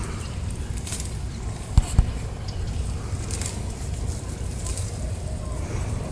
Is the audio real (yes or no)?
yes